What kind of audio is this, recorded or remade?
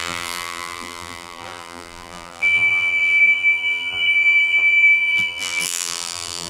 remade